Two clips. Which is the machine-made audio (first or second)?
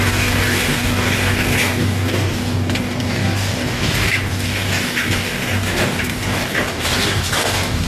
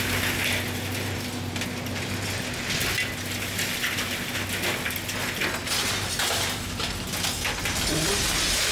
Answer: first